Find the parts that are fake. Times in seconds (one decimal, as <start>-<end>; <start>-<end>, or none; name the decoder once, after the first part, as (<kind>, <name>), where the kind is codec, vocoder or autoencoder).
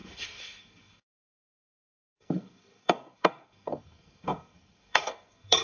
0.0-5.6 (codec, SNAC)